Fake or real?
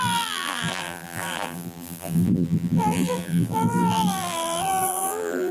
fake